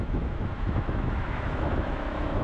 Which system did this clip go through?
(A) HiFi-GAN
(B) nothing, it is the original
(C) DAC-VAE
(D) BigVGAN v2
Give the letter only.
C